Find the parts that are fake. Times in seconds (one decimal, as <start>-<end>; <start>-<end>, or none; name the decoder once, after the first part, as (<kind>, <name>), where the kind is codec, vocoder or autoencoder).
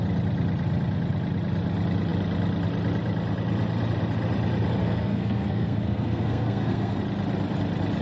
4.8-7.0 (codec, SNAC)